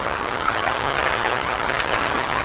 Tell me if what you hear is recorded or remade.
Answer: remade